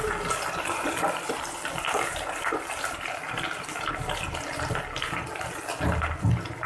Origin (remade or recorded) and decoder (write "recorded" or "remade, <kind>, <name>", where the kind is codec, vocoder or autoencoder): recorded